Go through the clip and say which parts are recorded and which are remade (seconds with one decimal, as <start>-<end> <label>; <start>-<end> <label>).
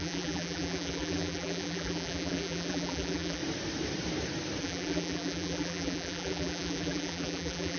0.0-3.4 remade; 3.4-4.6 recorded; 4.6-7.8 remade